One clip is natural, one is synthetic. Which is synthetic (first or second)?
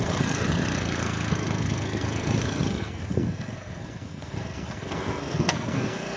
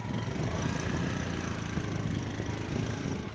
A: first